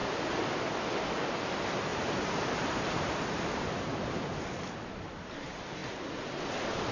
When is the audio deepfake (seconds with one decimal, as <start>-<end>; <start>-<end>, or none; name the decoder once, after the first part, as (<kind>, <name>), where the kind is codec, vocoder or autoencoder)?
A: 1.3-3.9 (vocoder, BigVGAN v2); 4.7-5.8